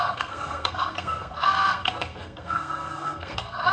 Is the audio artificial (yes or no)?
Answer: yes